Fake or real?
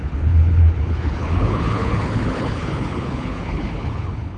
fake